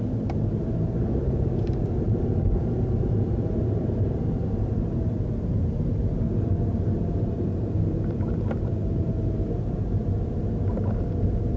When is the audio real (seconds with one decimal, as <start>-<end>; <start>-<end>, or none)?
6.0-6.7